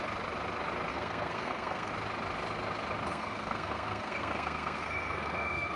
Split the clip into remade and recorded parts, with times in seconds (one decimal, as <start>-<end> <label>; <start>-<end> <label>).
0.0-0.9 recorded; 0.9-1.9 remade; 1.9-3.1 recorded; 3.1-5.8 remade